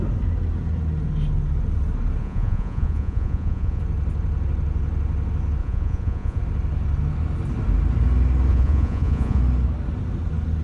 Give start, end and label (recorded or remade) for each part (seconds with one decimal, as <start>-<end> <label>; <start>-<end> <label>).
0.0-2.2 recorded; 2.2-3.8 remade; 3.8-5.6 recorded; 5.6-6.4 remade; 6.4-8.5 recorded; 8.5-9.4 remade; 9.4-10.6 recorded